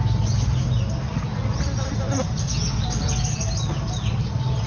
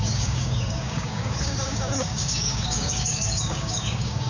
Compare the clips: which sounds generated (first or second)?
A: second